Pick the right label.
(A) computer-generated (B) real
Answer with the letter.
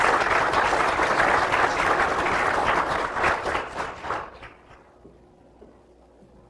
B